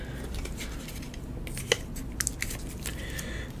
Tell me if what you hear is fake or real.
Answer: real